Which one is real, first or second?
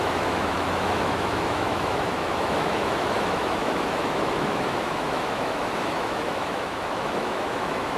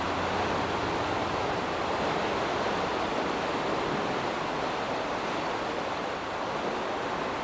second